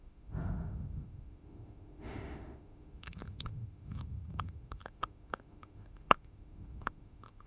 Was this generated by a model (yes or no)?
yes